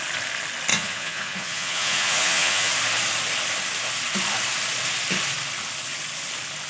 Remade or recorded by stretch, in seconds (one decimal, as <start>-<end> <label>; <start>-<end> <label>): 0.0-0.7 recorded; 0.7-2.7 remade; 2.7-6.7 recorded